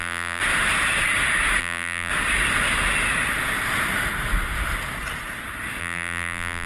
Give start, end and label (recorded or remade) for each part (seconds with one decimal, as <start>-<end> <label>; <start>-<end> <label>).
0.0-0.4 remade; 0.4-1.6 recorded; 1.6-2.1 remade; 2.1-5.8 recorded; 5.8-6.7 remade